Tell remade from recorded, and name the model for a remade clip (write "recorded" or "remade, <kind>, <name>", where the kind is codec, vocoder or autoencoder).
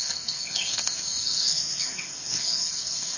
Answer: remade, codec, SNAC